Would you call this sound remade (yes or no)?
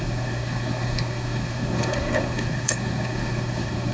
yes